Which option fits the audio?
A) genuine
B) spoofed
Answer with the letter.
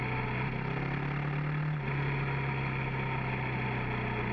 A